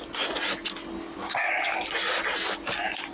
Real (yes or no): yes